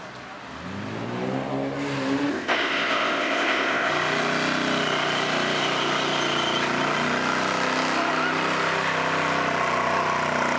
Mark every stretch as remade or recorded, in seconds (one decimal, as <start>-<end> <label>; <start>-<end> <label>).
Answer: 0.0-2.3 recorded; 2.3-3.9 remade; 3.9-10.6 recorded